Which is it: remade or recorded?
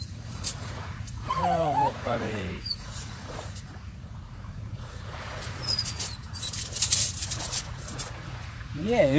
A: remade